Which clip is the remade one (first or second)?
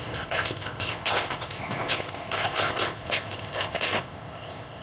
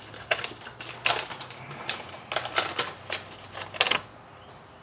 first